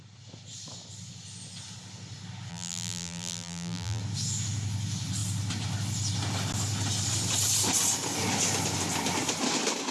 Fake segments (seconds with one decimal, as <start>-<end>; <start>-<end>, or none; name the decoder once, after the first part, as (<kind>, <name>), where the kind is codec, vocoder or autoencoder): 2.5-4.0 (vocoder, BigVGAN v2)